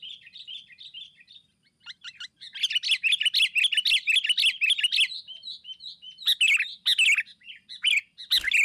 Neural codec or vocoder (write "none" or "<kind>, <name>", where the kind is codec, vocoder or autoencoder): none